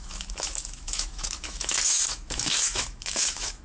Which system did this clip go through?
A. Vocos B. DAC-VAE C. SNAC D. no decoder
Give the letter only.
B